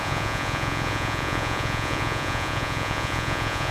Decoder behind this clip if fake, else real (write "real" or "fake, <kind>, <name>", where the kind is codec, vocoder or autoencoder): fake, vocoder, Vocos